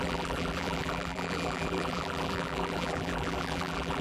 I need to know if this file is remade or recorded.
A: remade